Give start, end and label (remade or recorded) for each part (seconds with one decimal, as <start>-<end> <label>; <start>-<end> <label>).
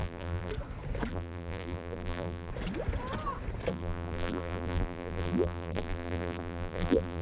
0.0-0.5 remade; 0.5-1.1 recorded; 1.1-2.5 remade; 2.5-3.7 recorded; 3.7-7.2 remade